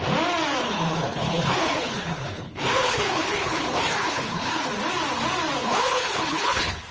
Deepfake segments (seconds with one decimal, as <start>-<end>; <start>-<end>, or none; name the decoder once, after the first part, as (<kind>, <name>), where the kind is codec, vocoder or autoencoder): 0.6-4.7 (codec, HILCodec); 5.6-6.9